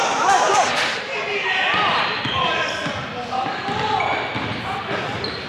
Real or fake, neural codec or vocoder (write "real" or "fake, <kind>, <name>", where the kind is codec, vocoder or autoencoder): real